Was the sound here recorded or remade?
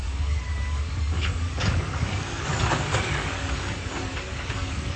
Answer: remade